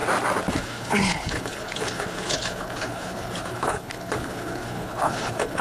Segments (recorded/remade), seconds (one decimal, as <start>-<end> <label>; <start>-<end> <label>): 0.0-0.5 recorded; 0.5-5.6 remade